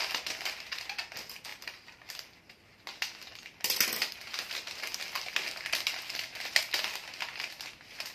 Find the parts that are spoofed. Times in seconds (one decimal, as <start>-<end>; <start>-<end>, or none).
1.5-2.4